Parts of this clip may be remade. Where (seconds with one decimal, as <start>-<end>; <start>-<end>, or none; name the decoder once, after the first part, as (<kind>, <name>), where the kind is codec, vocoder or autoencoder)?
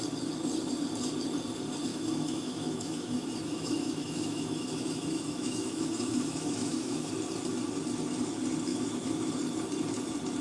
1.9-7.1 (autoencoder, DAC-VAE); 8.7-9.3